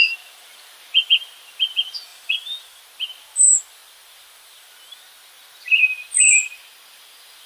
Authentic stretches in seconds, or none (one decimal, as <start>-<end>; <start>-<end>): 0.0-2.1; 2.8-7.5

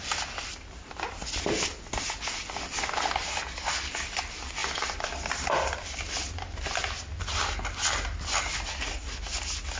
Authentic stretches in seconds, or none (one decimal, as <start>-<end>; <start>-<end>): 0.0-4.6; 6.8-9.8

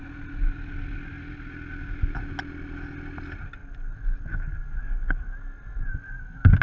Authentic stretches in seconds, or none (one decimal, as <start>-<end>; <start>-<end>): 0.0-6.6

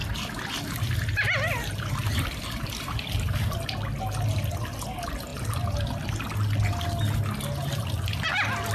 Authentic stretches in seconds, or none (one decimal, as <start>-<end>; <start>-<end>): 4.0-5.3; 6.1-8.7

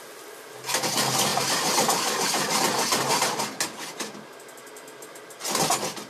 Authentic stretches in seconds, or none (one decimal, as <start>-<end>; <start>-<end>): 0.0-6.1